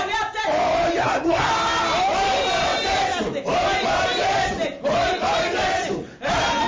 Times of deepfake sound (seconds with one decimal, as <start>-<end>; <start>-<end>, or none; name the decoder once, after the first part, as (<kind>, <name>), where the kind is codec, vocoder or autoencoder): 1.0-1.5 (codec, SNAC)